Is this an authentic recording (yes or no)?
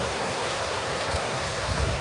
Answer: no